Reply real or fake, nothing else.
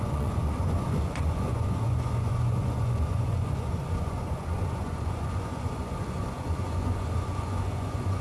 fake